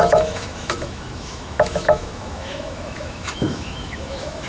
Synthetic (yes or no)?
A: yes